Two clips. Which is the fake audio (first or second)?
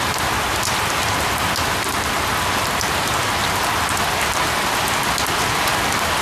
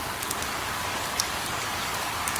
second